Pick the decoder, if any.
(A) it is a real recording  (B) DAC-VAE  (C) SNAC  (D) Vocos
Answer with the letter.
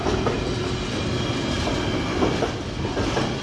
A